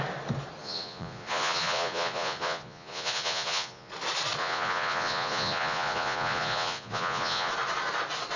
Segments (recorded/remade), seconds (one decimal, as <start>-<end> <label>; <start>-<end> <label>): 0.0-0.6 recorded; 0.6-3.9 remade; 3.9-4.4 recorded; 4.4-7.5 remade; 7.5-8.4 recorded